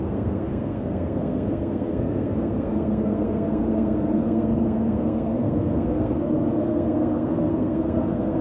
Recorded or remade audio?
remade